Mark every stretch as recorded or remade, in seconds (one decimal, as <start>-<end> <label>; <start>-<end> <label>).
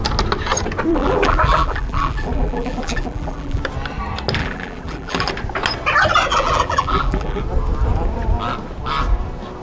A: 0.0-0.9 recorded; 0.9-3.6 remade; 3.6-4.4 recorded; 4.4-5.3 remade; 5.3-6.3 recorded; 6.3-7.4 remade; 7.4-9.6 recorded